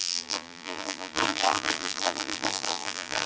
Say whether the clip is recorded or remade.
remade